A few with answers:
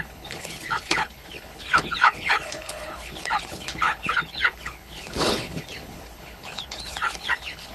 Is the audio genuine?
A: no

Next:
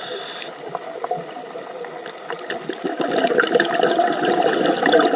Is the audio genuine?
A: yes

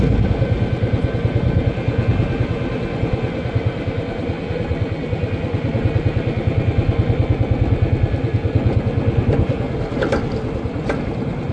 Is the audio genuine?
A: yes